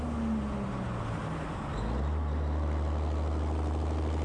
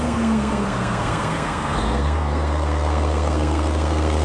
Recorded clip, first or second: first